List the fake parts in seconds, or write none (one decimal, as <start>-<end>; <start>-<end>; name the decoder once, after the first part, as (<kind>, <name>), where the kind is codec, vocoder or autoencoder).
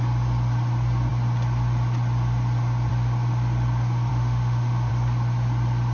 4.1-4.9 (autoencoder, DAC-VAE)